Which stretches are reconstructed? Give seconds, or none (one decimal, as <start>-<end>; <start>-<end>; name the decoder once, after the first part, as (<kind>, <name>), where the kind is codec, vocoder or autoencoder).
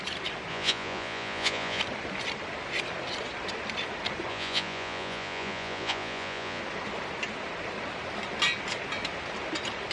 0.5-1.8 (vocoder, Vocos); 4.3-6.6